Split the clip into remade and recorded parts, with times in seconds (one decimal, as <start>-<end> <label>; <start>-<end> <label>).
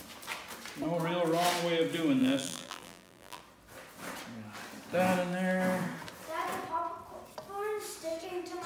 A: 0.0-2.2 recorded; 2.2-3.4 remade; 3.4-8.7 recorded